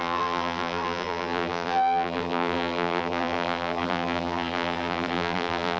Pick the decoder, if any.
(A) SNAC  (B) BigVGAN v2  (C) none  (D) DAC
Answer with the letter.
B